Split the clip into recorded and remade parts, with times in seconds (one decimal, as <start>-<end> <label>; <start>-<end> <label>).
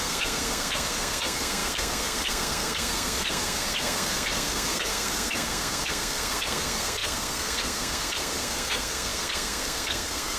0.0-10.4 remade